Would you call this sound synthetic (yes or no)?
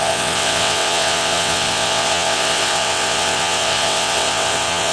yes